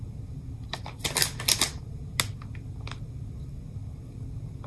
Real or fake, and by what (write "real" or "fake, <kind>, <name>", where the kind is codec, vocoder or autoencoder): real